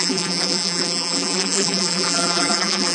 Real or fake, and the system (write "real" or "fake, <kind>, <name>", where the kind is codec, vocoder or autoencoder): fake, vocoder, BigVGAN v2